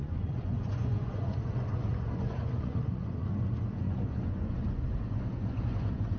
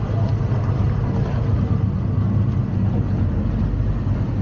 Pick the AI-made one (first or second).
first